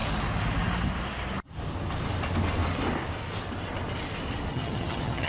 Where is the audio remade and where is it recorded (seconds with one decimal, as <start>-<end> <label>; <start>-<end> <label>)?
0.0-4.5 recorded; 4.5-5.3 remade